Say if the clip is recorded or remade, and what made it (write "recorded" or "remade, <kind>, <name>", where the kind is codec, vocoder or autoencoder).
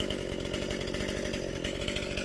recorded